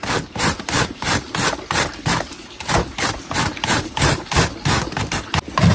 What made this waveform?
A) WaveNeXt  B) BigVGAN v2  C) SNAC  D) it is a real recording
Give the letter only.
D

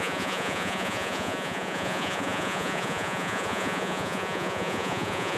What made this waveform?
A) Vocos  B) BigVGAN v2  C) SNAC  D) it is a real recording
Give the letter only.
A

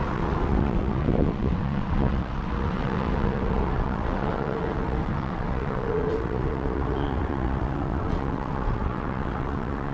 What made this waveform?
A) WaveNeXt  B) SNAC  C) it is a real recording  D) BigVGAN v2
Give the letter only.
A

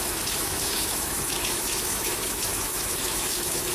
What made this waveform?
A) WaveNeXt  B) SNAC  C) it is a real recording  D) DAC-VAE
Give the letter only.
D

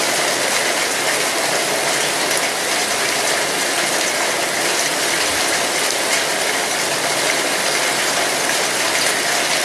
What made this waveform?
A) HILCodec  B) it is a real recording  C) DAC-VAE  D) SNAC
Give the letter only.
B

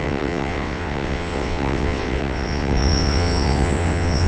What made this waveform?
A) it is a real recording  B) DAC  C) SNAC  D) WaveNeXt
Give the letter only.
D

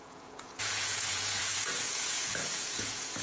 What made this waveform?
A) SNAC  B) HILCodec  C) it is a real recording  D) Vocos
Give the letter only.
D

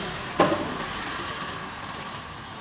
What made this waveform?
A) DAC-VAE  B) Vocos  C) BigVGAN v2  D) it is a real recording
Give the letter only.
D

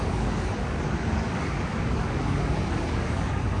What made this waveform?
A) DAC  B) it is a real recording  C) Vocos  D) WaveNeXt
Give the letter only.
A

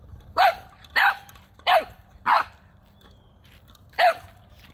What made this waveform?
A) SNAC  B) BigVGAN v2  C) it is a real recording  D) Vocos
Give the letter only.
B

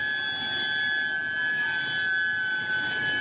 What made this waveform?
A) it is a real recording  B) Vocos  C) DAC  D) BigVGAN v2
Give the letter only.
A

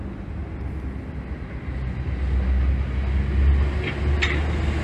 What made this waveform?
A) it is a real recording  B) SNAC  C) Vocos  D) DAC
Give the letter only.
A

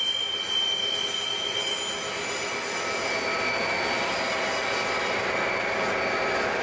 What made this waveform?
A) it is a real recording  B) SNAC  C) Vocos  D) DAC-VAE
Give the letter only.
A